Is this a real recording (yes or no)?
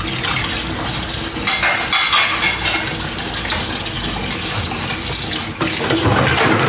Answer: yes